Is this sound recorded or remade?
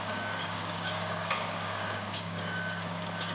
remade